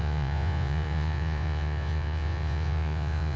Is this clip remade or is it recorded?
remade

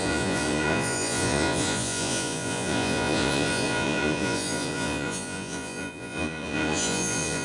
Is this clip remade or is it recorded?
remade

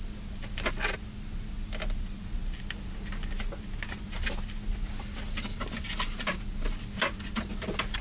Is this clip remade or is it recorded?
recorded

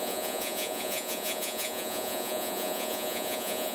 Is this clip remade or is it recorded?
remade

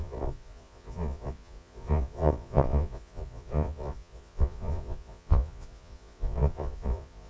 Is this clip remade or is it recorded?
remade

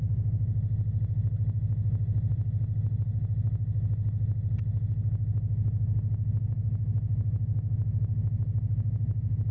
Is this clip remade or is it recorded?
recorded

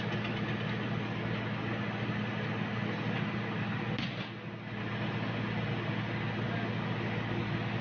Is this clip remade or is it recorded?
recorded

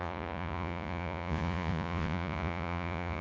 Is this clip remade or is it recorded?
remade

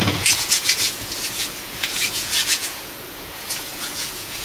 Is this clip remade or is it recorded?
remade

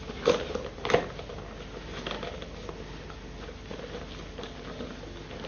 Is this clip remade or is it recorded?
recorded